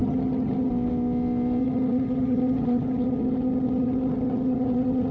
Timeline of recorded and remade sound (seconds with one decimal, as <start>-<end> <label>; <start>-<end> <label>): 0.0-0.7 remade; 0.7-1.6 recorded; 1.6-5.1 remade